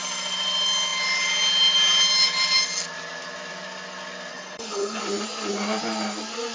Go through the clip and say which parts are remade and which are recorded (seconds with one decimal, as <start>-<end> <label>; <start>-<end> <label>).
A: 0.0-4.3 recorded; 4.3-5.0 remade; 5.0-6.5 recorded